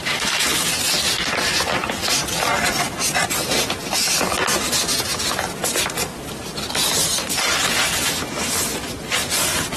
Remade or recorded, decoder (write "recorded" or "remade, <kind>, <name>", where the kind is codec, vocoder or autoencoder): recorded